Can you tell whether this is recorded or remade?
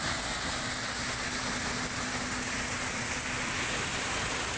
recorded